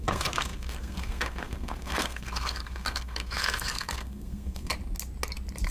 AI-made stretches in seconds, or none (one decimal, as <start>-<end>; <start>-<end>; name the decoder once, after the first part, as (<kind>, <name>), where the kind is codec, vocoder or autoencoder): 0.0-4.7 (codec, SNAC)